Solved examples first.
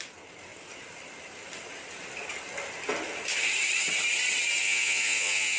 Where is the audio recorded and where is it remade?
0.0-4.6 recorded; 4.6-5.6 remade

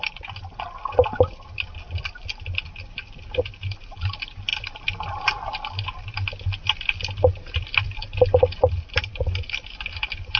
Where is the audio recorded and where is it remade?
0.0-10.4 recorded

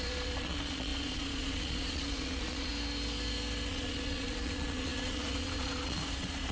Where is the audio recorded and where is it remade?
0.0-2.7 remade; 2.7-3.7 recorded; 3.7-6.5 remade

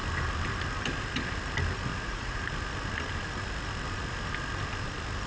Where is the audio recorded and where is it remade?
0.0-1.9 recorded; 1.9-2.4 remade; 2.4-5.3 recorded